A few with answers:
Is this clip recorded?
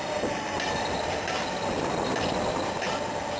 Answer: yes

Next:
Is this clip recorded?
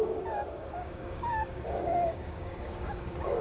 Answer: no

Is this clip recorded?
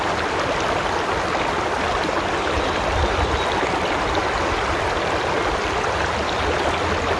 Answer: yes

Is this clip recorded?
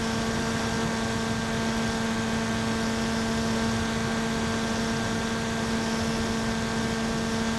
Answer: yes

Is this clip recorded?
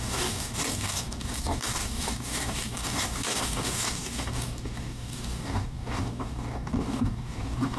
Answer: no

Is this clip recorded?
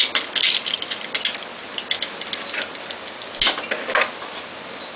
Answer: yes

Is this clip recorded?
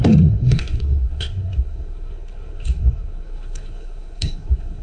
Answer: no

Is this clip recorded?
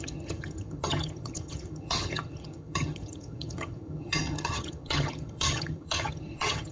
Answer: no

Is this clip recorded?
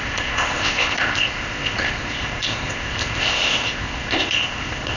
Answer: no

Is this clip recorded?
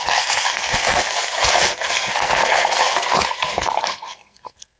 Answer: no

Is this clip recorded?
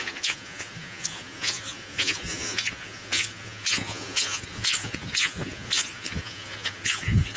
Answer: no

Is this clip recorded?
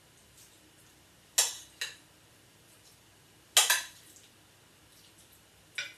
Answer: yes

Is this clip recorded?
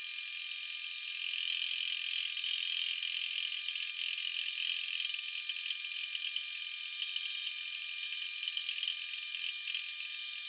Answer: yes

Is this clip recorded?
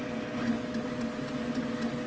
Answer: yes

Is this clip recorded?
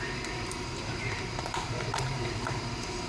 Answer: no